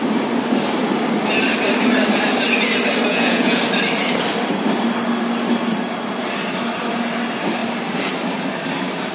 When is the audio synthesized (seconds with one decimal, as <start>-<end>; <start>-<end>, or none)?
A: 3.1-3.6